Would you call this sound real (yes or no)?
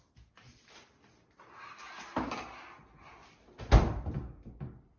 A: yes